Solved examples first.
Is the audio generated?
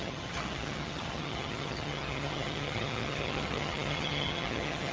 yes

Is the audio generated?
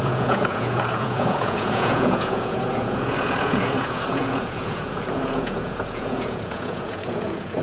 yes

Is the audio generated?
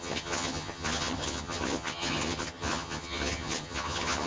yes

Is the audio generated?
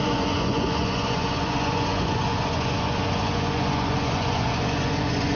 yes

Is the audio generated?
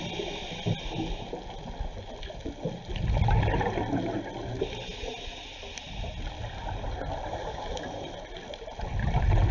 no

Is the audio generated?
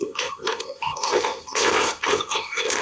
yes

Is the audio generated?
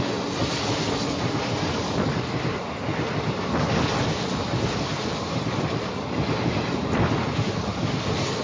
no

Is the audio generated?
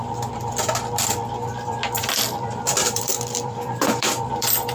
yes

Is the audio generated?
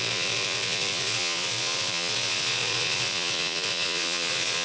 yes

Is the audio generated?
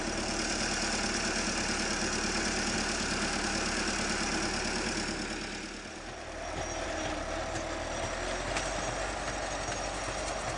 no